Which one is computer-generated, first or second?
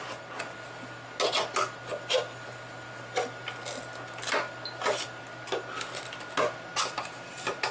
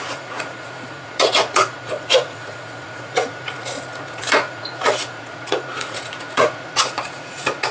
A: second